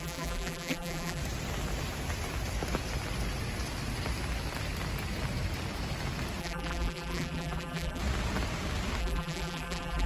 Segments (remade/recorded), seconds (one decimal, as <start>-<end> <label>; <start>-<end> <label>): 0.0-1.2 remade; 1.2-6.4 recorded; 6.4-8.0 remade; 8.0-9.0 recorded; 9.0-10.1 remade